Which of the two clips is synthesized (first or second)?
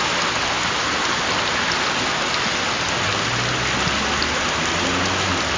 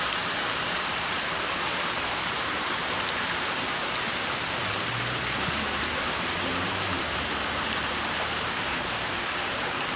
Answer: second